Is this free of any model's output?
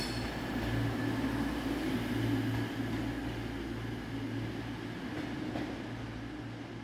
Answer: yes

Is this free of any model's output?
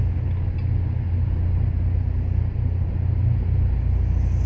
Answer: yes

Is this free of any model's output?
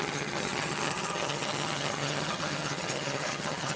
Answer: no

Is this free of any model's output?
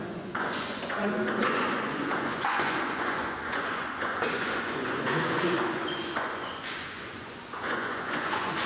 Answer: no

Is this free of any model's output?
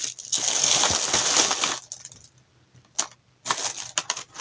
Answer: yes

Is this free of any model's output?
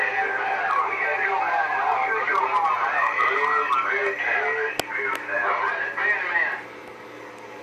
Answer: yes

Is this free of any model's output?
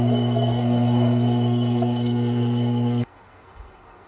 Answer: no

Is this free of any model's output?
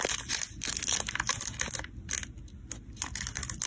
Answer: yes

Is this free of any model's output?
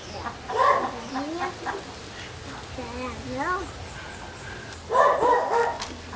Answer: yes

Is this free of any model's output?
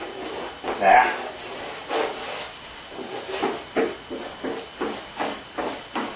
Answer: yes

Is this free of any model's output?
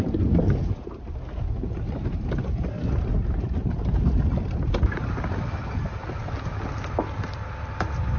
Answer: yes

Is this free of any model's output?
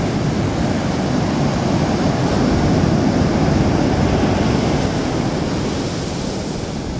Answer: yes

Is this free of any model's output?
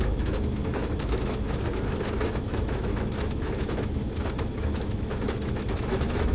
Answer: no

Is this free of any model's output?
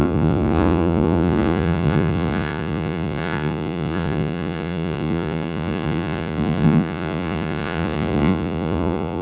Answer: no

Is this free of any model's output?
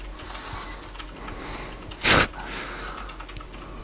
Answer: yes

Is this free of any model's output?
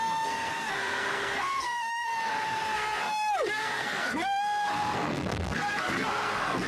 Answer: no